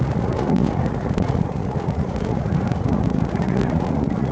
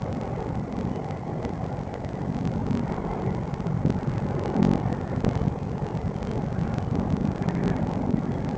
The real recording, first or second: second